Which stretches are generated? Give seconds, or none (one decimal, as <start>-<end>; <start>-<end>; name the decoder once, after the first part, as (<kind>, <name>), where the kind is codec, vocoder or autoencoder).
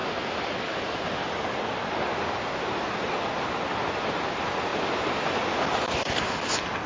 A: none